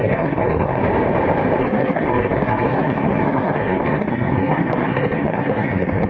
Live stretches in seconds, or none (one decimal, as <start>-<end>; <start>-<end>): 0.8-1.6